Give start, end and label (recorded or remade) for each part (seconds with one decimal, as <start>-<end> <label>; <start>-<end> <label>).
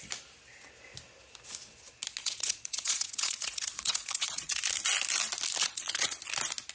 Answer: 0.0-2.2 recorded; 2.2-4.6 remade; 4.6-5.6 recorded; 5.6-6.2 remade; 6.2-6.7 recorded